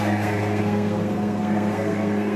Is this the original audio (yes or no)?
no